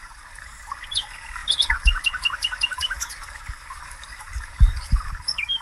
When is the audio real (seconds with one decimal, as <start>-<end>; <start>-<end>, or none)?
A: none